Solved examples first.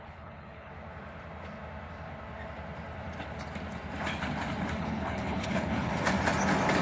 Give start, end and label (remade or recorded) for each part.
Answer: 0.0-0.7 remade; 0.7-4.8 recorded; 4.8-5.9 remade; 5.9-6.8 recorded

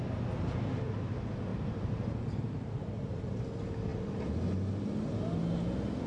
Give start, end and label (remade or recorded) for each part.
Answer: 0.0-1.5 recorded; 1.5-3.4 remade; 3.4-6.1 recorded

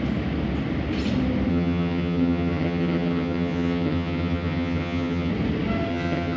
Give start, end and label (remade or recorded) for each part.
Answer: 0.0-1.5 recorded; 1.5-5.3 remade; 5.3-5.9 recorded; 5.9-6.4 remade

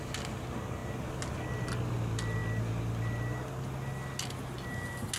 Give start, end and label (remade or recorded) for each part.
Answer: 0.0-5.2 recorded

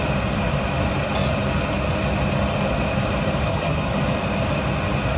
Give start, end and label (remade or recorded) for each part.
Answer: 0.0-3.5 recorded; 3.5-4.0 remade; 4.0-5.2 recorded

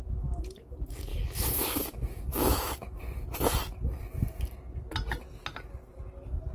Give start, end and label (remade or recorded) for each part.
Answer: 0.0-1.1 recorded; 1.1-3.0 remade; 3.0-6.5 recorded

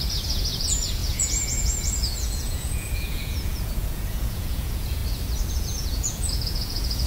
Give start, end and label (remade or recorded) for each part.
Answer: 0.0-5.0 remade; 5.0-5.5 recorded; 5.5-7.1 remade